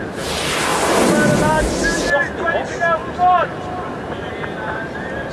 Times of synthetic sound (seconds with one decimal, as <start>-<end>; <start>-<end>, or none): none